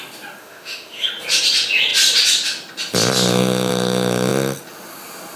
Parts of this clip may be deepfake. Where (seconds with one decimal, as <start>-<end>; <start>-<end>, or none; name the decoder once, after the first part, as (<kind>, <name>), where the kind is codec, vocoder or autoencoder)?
0.4-1.1 (autoencoder, DAC-VAE)